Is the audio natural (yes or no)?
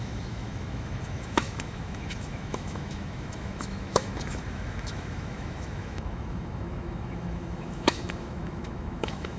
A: no